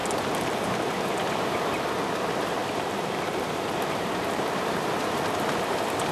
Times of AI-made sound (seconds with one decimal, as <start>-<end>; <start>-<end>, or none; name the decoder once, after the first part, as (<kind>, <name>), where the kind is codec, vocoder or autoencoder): 2.6-4.9 (vocoder, BigVGAN v2)